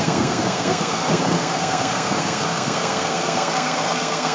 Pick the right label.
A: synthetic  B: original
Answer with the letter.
A